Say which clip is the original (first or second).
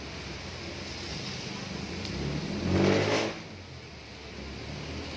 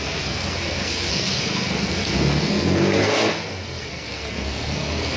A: first